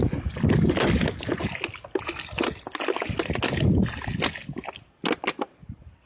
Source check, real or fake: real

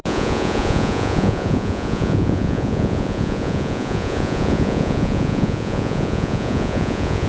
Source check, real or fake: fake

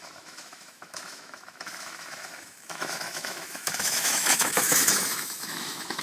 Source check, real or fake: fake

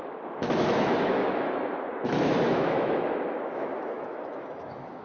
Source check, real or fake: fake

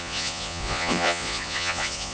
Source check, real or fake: fake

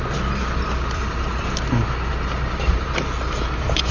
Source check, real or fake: real